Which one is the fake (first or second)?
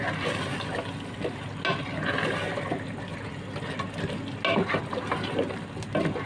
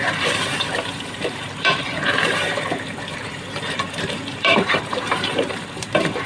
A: second